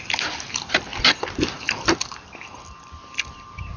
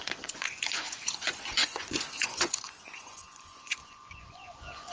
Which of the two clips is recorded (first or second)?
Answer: first